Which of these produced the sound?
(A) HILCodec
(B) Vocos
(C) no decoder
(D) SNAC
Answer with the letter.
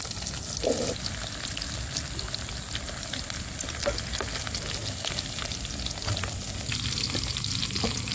C